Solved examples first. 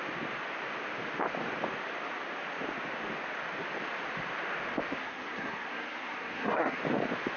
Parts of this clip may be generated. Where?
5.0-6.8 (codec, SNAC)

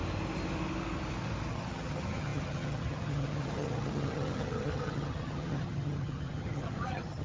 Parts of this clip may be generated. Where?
1.5-7.2 (vocoder, HiFi-GAN)

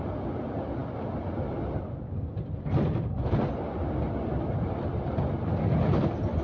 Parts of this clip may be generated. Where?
0.8-3.6 (vocoder, BigVGAN v2)

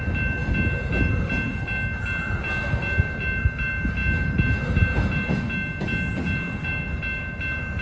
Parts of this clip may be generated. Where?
none

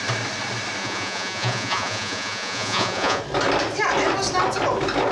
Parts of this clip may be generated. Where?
0.8-3.2 (vocoder, Vocos)

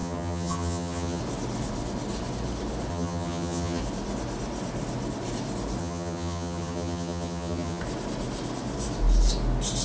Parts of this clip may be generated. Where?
0.0-1.2 (vocoder, HiFi-GAN); 2.9-3.8; 5.8-7.8

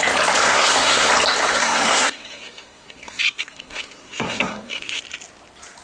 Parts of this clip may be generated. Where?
0.4-1.1 (codec, SNAC); 1.5-5.0